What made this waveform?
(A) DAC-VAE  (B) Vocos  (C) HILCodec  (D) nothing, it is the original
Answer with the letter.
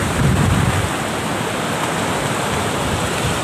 D